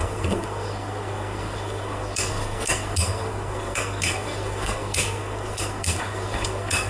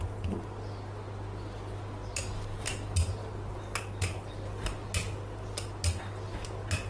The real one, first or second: second